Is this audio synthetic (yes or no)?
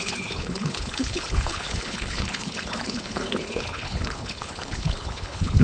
yes